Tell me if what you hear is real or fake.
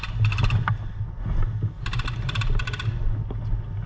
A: real